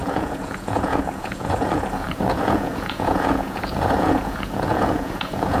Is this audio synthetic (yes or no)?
yes